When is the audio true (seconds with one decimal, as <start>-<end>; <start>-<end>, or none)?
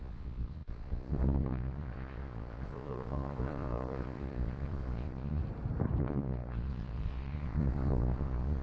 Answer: 5.4-6.0